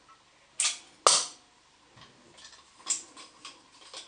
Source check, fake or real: real